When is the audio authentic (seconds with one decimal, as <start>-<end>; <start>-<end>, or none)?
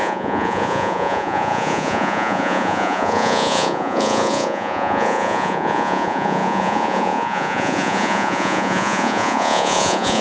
none